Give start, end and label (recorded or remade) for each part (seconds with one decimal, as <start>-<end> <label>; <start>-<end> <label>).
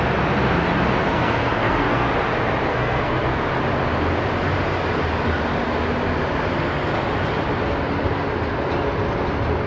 0.0-1.0 recorded; 1.0-2.1 remade; 2.1-2.7 recorded; 2.7-3.4 remade; 3.4-9.7 recorded